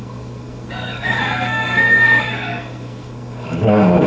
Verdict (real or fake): fake